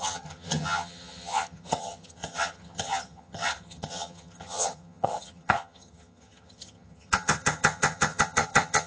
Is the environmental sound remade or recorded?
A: remade